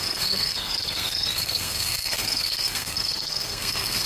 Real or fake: fake